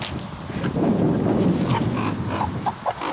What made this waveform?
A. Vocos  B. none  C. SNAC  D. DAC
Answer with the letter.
B